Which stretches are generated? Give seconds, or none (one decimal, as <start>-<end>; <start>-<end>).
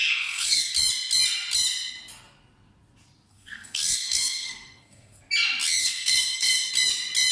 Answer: 0.0-0.7; 3.3-5.2; 5.8-6.7